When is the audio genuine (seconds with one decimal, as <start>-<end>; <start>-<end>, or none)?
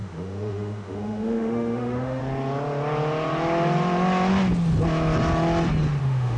2.2-6.0